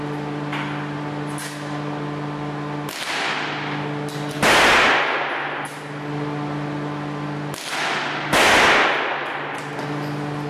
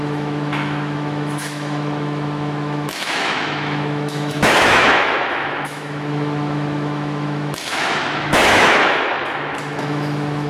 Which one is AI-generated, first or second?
second